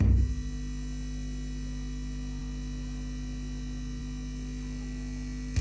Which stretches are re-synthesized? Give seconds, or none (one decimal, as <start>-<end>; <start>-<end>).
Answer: none